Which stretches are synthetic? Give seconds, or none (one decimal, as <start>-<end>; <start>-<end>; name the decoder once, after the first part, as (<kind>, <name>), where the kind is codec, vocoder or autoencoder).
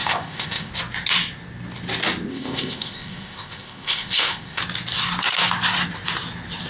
0.0-0.7 (codec, ZipCodec); 2.3-4.6